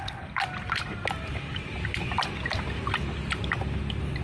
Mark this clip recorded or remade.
recorded